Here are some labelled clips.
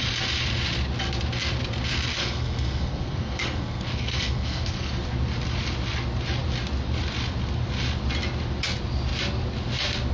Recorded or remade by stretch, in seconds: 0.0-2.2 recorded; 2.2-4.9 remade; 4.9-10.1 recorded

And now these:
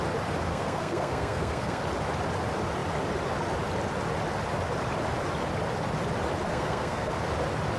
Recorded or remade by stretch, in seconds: 0.0-0.5 recorded; 0.5-1.8 remade; 1.8-6.5 recorded; 6.5-7.1 remade; 7.1-7.8 recorded

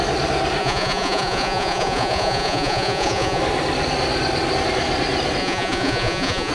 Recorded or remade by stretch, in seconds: 0.0-0.6 recorded; 0.6-3.4 remade; 3.4-5.4 recorded; 5.4-6.5 remade

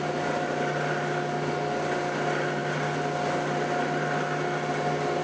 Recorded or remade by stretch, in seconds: 0.0-5.2 recorded

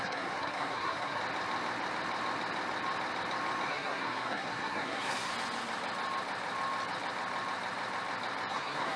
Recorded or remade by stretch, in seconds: 0.0-1.2 remade; 1.2-3.7 recorded; 3.7-5.3 remade; 5.3-8.5 recorded; 8.5-9.0 remade

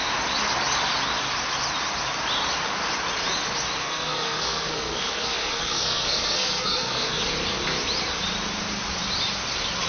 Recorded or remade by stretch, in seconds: 0.0-3.8 recorded; 3.8-7.2 remade; 7.2-9.9 recorded

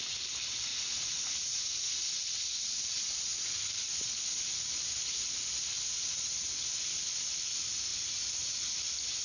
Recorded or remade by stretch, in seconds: 0.0-0.7 recorded; 0.7-1.9 remade; 1.9-9.2 recorded

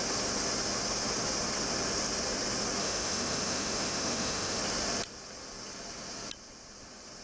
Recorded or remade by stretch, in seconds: 0.0-2.8 recorded; 2.8-4.6 remade; 4.6-7.2 recorded